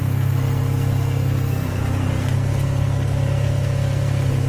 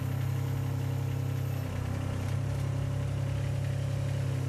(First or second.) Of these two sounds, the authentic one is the second